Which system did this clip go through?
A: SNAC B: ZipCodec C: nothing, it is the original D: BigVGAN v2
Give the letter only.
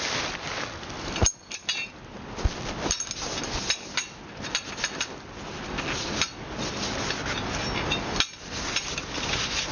C